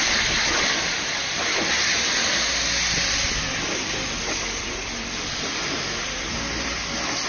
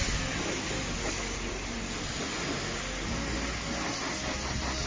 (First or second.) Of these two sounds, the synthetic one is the first